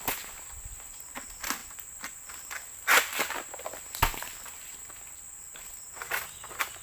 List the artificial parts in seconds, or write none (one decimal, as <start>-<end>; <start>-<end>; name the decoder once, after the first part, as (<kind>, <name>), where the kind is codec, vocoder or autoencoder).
none